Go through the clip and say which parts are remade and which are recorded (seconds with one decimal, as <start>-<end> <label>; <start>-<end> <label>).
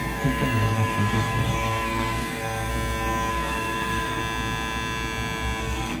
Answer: 0.0-2.7 remade; 2.7-3.3 recorded; 3.3-4.2 remade; 4.2-5.6 recorded; 5.6-6.0 remade